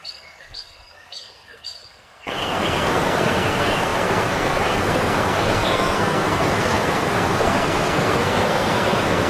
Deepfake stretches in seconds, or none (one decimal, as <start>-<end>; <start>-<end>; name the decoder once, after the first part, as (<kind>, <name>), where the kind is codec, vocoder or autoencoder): 0.0-9.3 (codec, SNAC)